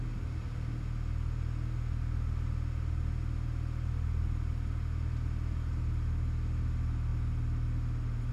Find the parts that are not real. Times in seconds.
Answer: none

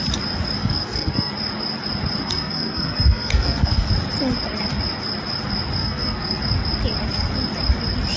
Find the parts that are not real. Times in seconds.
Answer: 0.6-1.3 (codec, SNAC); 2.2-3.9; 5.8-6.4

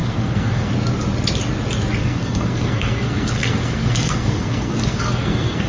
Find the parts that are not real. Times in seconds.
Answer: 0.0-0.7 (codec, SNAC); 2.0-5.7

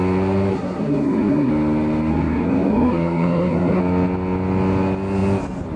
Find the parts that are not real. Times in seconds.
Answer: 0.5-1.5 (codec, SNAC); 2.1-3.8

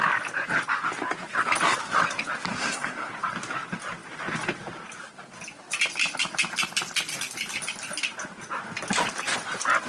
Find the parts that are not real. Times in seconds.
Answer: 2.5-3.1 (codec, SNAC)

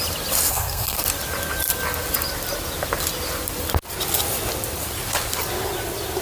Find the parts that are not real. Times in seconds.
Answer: 0.5-1.0 (codec, SNAC)

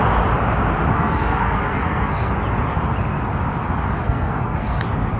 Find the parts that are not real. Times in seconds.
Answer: 0.9-2.3 (codec, SNAC); 4.0-4.8

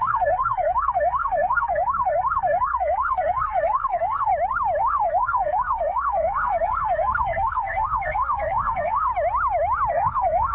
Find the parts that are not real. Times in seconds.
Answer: 0.0-4.3 (codec, SNAC); 4.8-9.1; 9.9-10.5